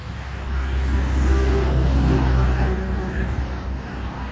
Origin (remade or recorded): remade